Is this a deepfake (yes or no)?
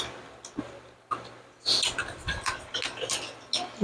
no